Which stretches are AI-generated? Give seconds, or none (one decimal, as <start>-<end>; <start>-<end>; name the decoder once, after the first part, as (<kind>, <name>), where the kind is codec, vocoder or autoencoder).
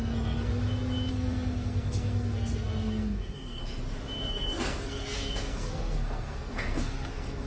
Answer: 0.0-0.5 (codec, SNAC); 1.1-3.6; 4.2-7.5